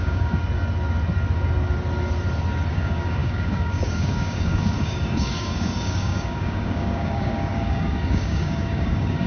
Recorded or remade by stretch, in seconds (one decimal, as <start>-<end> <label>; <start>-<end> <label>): 0.0-0.4 remade; 0.4-2.7 recorded; 2.7-9.3 remade